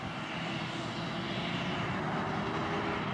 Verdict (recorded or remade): recorded